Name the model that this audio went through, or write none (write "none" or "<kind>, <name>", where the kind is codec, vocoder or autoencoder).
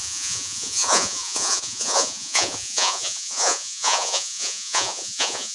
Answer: vocoder, Vocos